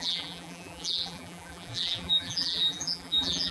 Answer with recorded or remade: remade